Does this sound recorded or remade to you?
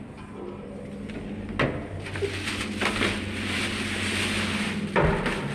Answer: recorded